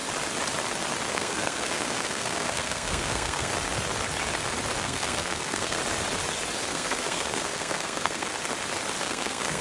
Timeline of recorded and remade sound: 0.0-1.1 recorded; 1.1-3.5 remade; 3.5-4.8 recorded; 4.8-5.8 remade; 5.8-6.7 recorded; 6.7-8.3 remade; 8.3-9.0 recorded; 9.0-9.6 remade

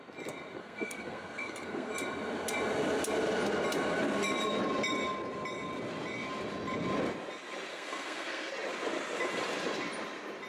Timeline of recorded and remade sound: 0.0-0.6 recorded; 0.6-1.9 remade; 1.9-7.7 recorded; 7.7-8.5 remade; 8.5-10.5 recorded